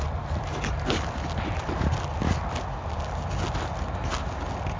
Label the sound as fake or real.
real